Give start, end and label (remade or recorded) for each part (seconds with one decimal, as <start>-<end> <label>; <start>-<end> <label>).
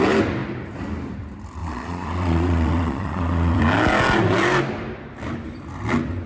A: 0.0-1.6 recorded; 1.6-3.6 remade; 3.6-6.3 recorded